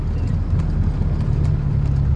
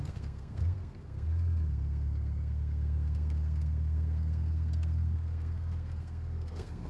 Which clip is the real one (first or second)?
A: first